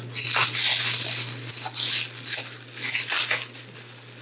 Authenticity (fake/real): real